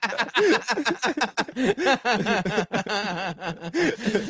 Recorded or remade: recorded